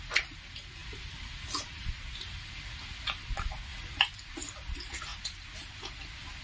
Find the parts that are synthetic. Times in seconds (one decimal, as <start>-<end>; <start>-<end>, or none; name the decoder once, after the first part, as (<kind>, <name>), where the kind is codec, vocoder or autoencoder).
none